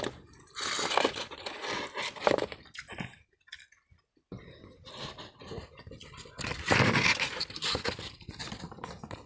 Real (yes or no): yes